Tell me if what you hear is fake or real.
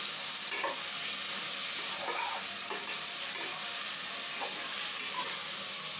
real